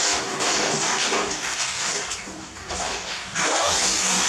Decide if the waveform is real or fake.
fake